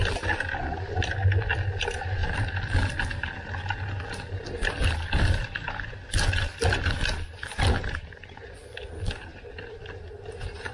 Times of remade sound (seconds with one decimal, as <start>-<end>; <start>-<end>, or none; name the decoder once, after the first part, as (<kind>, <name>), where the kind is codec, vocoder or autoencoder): none